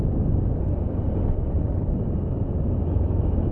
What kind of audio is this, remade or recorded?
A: recorded